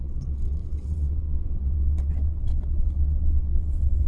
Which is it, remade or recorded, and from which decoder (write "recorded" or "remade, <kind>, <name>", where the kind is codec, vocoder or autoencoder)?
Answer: remade, vocoder, WaveNeXt